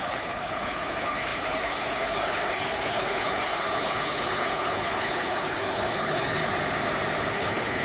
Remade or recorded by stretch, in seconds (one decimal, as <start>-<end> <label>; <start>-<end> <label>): 0.0-6.4 remade; 6.4-7.3 recorded; 7.3-7.8 remade